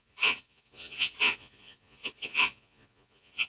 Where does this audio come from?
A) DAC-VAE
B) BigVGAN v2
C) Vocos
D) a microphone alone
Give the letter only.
C